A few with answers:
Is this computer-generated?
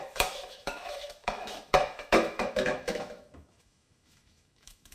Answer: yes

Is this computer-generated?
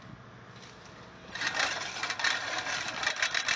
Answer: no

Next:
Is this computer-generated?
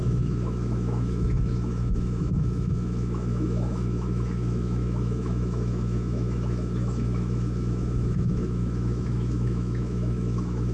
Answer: yes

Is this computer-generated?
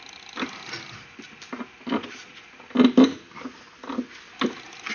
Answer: no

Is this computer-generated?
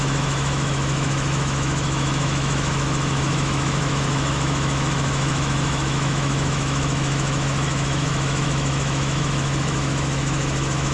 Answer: yes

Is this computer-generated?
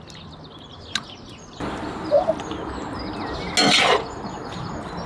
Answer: no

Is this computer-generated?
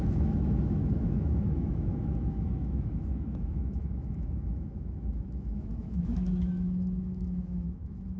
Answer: yes